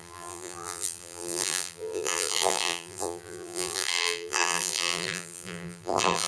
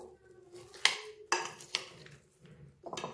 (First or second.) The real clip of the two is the second